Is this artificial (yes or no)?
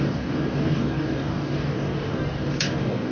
yes